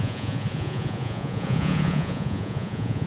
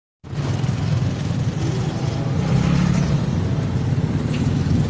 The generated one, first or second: first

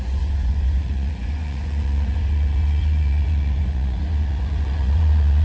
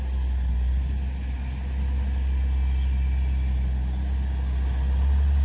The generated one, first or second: first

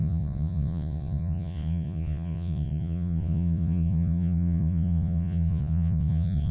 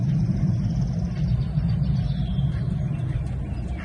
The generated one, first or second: first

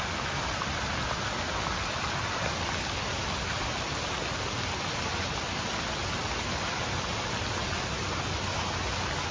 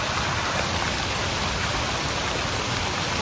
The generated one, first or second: second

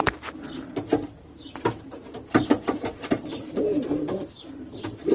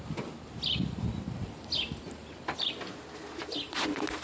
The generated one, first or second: first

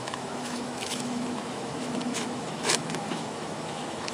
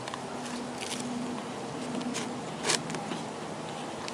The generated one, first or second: first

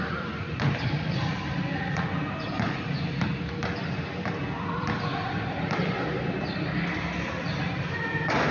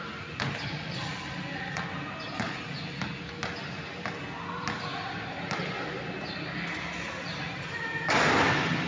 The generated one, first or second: first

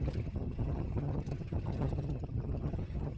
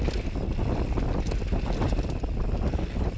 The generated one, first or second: first